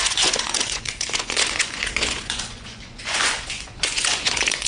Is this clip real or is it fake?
fake